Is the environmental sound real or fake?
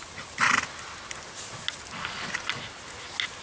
real